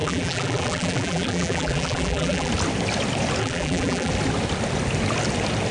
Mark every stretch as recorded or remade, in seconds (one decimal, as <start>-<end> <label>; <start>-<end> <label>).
0.0-2.5 remade; 2.5-3.4 recorded; 3.4-4.1 remade; 4.1-5.7 recorded